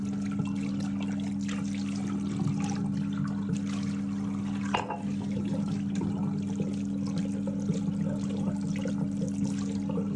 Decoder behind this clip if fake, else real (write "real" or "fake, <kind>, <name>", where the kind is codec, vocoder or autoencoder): real